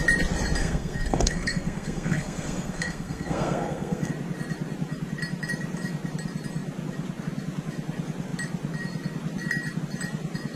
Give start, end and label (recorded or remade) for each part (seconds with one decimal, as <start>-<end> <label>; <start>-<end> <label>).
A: 0.0-0.6 recorded; 0.6-4.1 remade; 4.1-10.6 recorded